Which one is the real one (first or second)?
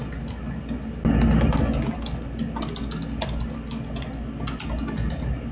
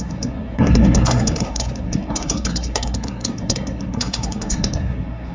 first